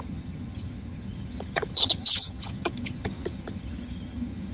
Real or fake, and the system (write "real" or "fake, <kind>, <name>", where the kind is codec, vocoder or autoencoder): fake, vocoder, HiFi-GAN